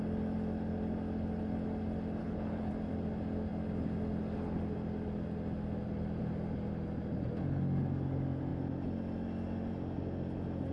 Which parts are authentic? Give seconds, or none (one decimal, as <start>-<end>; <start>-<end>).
0.0-2.2; 2.7-10.7